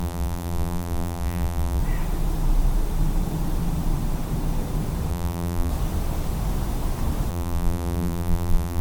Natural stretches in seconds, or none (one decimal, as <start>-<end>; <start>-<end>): 1.8-5.1; 5.7-7.3